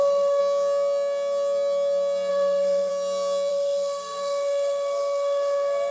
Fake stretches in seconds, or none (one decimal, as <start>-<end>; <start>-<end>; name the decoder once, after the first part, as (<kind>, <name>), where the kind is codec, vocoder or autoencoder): 0.0-0.4 (codec, SNAC); 2.3-2.9; 3.5-5.9